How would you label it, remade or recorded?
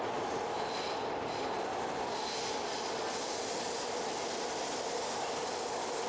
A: recorded